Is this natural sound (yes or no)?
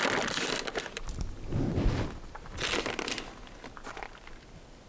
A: yes